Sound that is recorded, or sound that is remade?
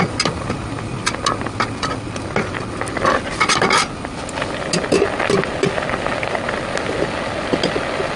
recorded